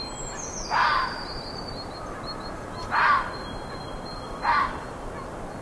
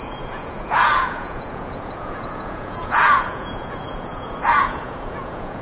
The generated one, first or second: second